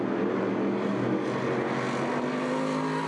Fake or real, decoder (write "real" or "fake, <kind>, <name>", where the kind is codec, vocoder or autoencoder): real